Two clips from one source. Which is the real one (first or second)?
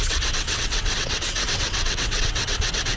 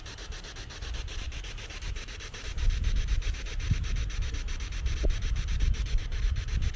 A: second